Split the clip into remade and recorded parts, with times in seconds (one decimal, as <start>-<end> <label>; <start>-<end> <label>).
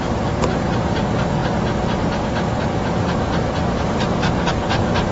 0.0-5.1 recorded